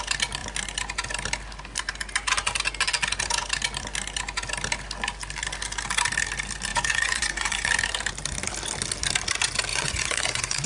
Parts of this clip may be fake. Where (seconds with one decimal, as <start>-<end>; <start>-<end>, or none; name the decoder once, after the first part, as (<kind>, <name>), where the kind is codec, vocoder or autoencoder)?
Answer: 6.7-7.7 (vocoder, Vocos); 9.7-10.7